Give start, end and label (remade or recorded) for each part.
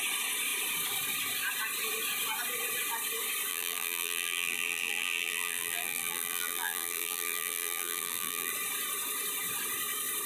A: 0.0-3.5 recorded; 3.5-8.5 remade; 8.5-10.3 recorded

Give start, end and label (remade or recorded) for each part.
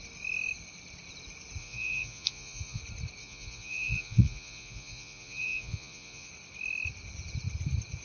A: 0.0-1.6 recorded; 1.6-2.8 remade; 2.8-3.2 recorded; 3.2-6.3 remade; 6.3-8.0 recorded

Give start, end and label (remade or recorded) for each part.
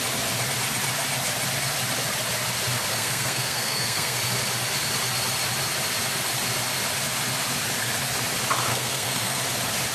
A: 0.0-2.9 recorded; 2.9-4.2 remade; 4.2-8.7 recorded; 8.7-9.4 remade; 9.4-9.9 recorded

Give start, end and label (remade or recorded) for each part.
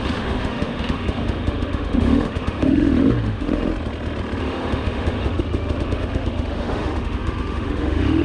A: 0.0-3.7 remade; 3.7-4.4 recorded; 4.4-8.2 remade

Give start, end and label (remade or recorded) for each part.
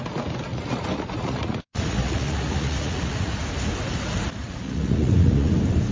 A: 0.0-0.5 recorded; 0.5-3.4 remade; 3.4-4.4 recorded; 4.4-5.5 remade; 5.5-5.9 recorded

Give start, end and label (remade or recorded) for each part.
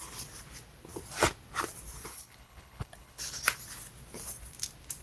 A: 0.0-2.1 recorded; 2.1-3.2 remade; 3.2-5.0 recorded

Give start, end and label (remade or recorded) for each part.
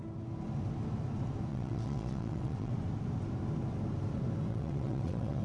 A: 0.0-1.5 recorded; 1.5-2.7 remade; 2.7-4.5 recorded; 4.5-5.4 remade